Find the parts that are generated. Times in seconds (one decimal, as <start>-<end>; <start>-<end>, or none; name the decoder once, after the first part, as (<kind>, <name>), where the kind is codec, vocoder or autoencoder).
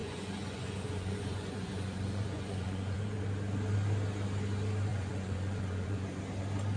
0.0-3.2 (vocoder, Vocos); 4.9-6.2